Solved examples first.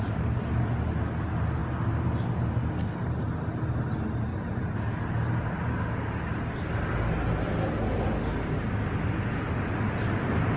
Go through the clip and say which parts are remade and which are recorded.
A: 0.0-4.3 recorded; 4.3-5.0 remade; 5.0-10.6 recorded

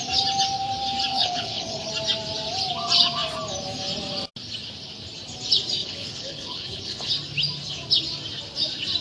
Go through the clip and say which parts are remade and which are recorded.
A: 0.0-1.1 recorded; 1.1-1.9 remade; 1.9-5.8 recorded; 5.8-7.1 remade; 7.1-9.0 recorded

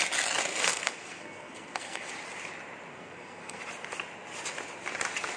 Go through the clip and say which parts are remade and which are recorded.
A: 0.0-0.5 recorded; 0.5-2.1 remade; 2.1-2.9 recorded; 2.9-3.6 remade; 3.6-5.4 recorded

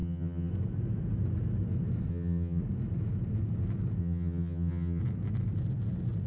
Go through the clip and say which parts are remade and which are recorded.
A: 0.0-0.5 remade; 0.5-2.1 recorded; 2.1-2.6 remade; 2.6-4.0 recorded; 4.0-5.0 remade; 5.0-6.3 recorded

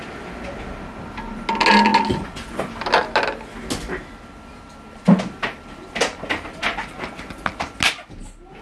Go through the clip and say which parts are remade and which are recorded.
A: 0.0-8.6 recorded